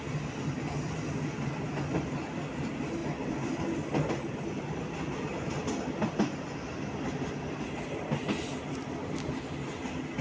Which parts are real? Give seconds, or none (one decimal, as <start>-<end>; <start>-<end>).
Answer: 0.0-10.2